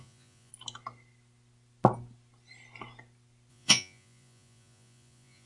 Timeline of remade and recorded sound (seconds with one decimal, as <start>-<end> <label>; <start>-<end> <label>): 0.0-0.5 remade; 0.5-3.5 recorded; 3.5-5.5 remade